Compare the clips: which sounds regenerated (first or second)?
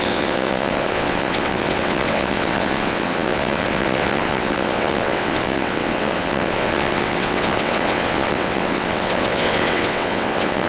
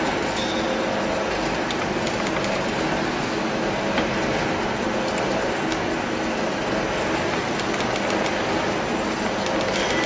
first